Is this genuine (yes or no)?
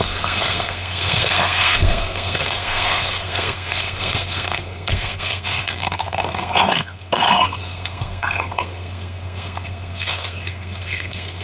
no